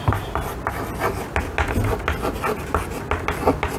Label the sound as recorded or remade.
recorded